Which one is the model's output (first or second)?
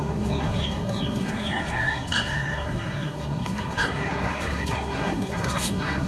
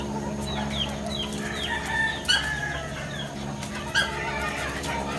first